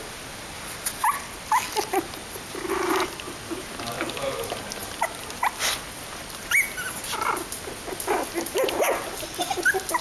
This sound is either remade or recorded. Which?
recorded